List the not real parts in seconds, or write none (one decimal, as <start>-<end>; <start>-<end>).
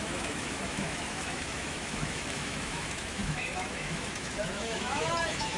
0.0-5.6